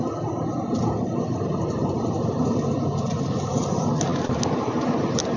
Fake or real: real